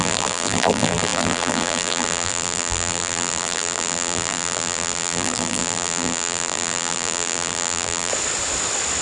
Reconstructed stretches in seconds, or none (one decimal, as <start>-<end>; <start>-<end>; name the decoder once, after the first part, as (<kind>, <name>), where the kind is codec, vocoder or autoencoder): 0.0-8.1 (vocoder, BigVGAN v2)